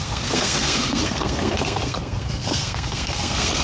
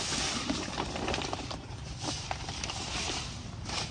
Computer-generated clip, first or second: first